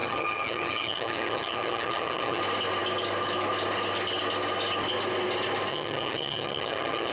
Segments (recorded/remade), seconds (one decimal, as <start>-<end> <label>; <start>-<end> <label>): 0.0-2.4 remade; 2.4-5.7 recorded; 5.7-7.1 remade